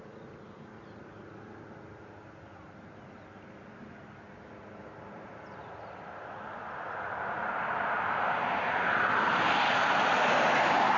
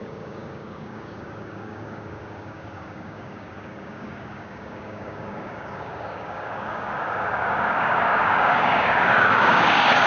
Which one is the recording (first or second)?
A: first